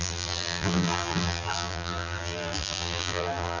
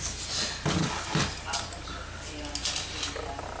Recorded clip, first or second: second